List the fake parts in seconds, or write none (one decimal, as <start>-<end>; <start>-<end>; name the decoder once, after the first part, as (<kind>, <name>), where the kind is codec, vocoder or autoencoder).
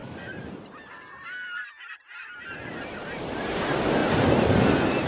none